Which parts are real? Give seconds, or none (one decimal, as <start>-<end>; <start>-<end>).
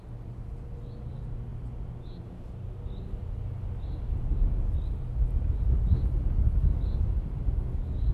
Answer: 0.0-8.1